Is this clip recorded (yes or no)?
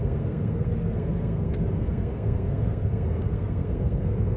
no